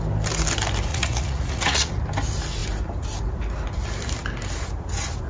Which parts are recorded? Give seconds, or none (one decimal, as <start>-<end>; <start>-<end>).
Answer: 0.0-0.9; 1.9-5.3